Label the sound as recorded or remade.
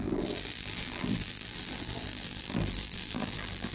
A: remade